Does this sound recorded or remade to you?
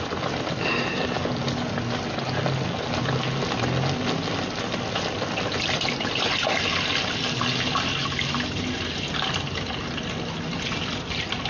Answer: recorded